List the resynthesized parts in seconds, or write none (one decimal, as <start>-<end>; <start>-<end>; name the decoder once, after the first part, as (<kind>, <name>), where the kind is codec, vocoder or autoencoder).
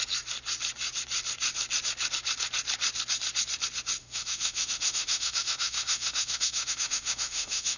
4.0-7.8 (autoencoder, DAC-VAE)